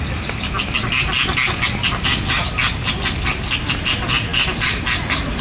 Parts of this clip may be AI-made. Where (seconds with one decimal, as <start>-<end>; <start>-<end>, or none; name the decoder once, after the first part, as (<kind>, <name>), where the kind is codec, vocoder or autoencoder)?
none